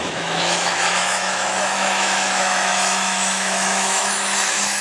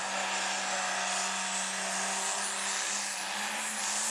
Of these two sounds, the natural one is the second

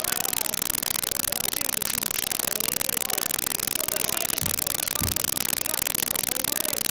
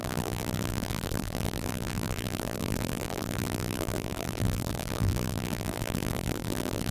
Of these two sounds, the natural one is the first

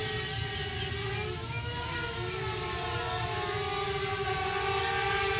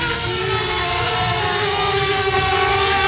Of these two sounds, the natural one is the first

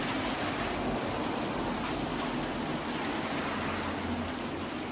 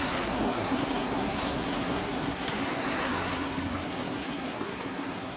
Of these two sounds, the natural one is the first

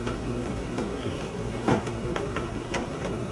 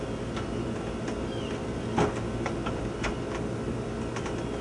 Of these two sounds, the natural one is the second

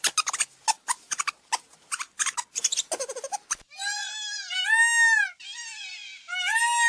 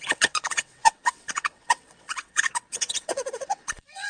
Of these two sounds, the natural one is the first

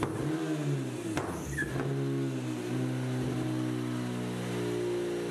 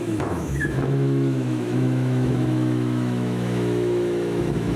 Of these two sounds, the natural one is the first